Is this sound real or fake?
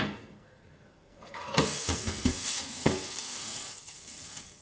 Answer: fake